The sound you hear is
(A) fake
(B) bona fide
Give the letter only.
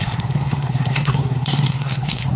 A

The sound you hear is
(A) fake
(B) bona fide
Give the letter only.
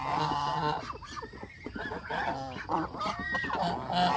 B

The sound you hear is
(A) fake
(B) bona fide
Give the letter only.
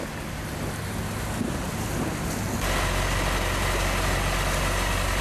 B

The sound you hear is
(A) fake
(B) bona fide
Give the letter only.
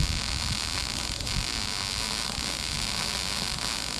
B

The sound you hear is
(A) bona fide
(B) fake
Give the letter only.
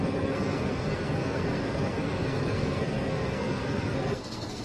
B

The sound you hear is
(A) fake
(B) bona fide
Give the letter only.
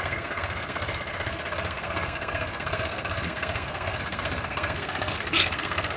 A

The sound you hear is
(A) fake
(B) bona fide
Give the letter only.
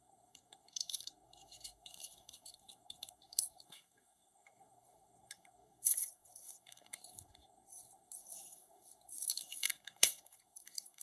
A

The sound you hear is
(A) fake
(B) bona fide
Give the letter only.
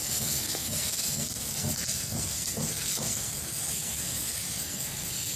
A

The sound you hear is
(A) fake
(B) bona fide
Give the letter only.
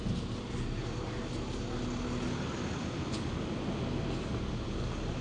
B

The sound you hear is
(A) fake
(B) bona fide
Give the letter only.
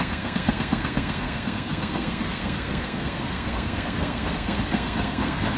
A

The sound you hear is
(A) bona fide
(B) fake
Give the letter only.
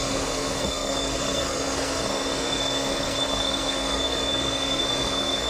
B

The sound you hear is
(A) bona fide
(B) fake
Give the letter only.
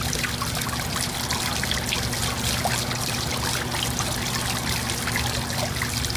A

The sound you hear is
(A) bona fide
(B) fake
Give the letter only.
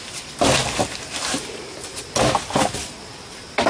A